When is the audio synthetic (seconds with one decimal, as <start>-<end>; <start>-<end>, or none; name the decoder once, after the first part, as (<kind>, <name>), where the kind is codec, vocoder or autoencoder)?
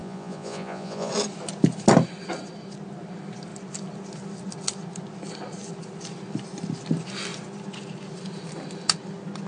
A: 0.0-1.1 (vocoder, Vocos)